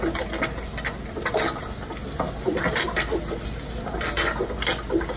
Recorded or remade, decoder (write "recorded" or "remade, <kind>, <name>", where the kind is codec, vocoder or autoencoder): recorded